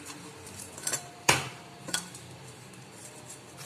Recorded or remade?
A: remade